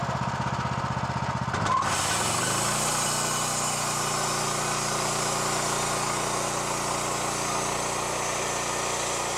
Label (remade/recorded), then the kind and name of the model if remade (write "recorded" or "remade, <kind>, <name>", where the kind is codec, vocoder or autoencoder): recorded